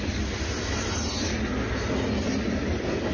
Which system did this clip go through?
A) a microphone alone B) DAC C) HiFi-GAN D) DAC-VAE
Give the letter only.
A